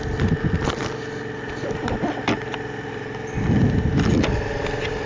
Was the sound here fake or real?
real